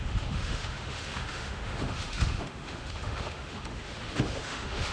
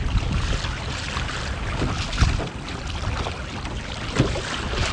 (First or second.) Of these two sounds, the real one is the second